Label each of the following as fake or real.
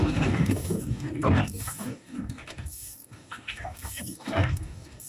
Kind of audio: fake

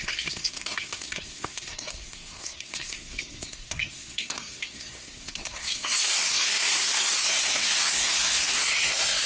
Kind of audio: fake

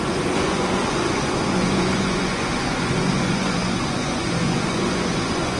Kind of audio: fake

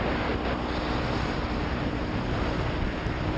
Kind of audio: real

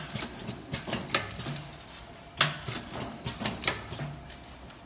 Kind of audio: real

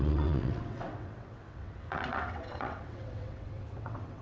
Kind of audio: fake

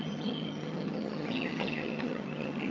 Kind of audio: fake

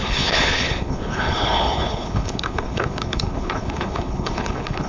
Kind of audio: fake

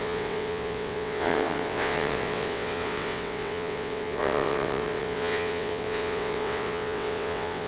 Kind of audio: fake